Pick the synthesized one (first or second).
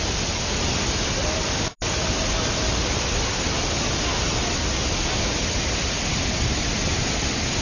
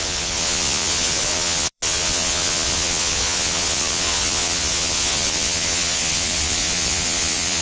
second